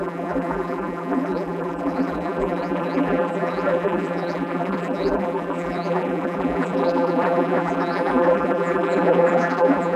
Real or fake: fake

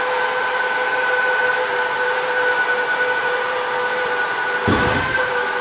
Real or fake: fake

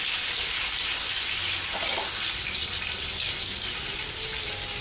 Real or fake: real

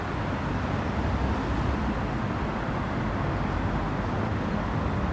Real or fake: real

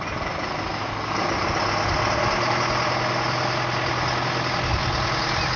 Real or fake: real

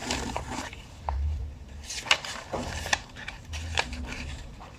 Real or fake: fake